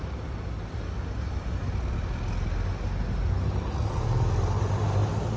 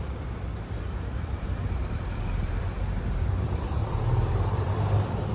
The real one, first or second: first